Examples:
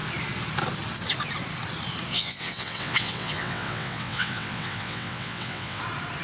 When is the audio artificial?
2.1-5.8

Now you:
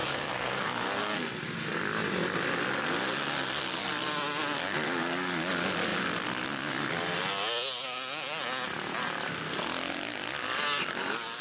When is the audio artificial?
0.0-0.7

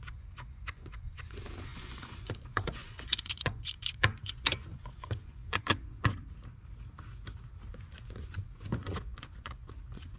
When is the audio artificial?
0.0-6.2; 7.7-10.2

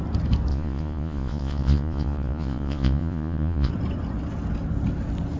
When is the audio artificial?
0.5-3.7

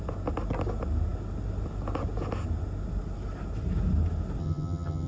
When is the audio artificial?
4.4-5.1

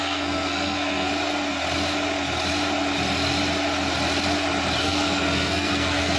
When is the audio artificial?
0.0-1.1; 4.8-6.2